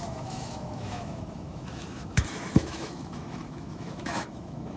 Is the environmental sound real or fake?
fake